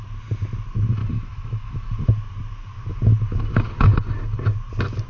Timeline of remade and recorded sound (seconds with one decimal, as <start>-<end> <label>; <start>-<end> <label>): 0.0-1.0 recorded; 1.0-1.9 remade; 1.9-5.1 recorded